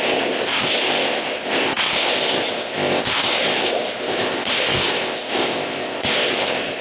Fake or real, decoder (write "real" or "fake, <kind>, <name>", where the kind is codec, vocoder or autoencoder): fake, codec, ZipCodec